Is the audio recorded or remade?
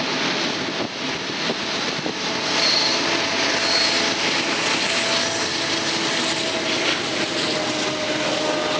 recorded